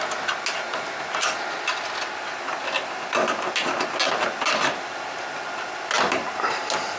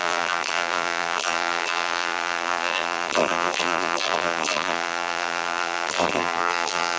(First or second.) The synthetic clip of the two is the second